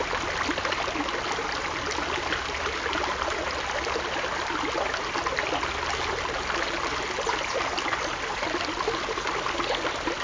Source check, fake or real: real